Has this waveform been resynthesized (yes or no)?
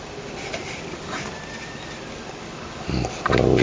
no